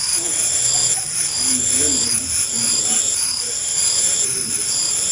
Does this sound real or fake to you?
fake